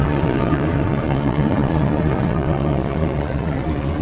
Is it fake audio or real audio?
fake